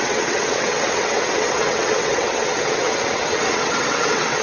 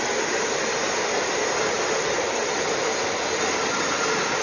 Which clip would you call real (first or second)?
second